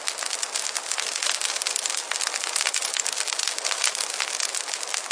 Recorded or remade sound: recorded